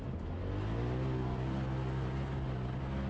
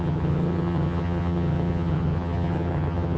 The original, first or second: first